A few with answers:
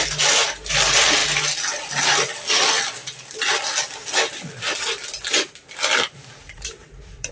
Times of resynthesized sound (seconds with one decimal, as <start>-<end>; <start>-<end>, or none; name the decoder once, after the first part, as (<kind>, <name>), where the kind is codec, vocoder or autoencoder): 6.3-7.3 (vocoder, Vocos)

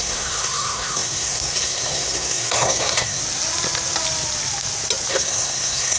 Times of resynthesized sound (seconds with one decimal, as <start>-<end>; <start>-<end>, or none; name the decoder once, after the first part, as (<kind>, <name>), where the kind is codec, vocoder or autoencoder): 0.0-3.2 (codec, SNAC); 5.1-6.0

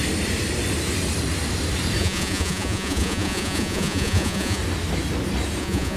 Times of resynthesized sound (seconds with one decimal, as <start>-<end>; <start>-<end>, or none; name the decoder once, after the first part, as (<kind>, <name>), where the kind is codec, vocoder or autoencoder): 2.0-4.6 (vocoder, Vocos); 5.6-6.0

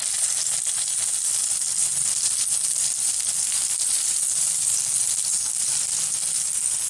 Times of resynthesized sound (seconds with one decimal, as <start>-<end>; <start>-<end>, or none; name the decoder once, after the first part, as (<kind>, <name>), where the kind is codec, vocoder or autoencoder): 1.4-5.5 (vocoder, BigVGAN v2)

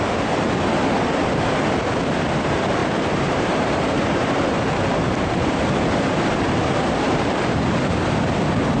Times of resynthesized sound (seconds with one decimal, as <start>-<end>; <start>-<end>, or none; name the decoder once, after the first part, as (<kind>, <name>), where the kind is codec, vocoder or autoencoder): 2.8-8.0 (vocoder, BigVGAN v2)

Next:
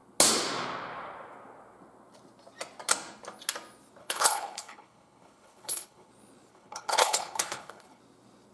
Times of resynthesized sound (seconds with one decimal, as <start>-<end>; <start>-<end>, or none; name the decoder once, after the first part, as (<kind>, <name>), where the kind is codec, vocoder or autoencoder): 4.0-6.1 (codec, HILCodec); 6.5-8.0

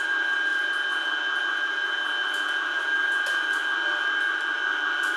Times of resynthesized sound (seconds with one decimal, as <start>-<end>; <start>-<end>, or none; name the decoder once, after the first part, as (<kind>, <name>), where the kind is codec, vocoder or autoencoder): none